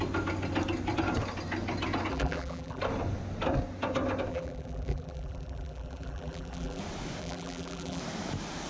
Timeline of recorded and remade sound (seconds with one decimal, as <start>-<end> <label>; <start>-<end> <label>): 0.0-2.1 recorded; 2.1-2.8 remade; 2.8-4.3 recorded; 4.3-6.8 remade; 6.8-7.2 recorded; 7.2-8.0 remade; 8.0-8.7 recorded

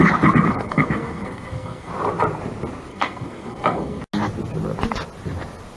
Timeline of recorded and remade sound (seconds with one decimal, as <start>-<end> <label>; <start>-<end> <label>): 0.0-0.5 recorded; 0.5-1.9 remade; 1.9-2.9 recorded; 2.9-4.0 remade; 4.0-5.8 recorded

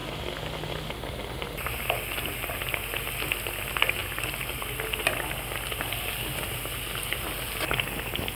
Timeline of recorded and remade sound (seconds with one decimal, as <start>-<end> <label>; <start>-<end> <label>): 0.0-8.3 recorded